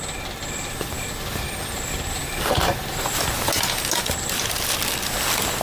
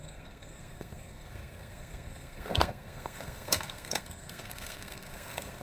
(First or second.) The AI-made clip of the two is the second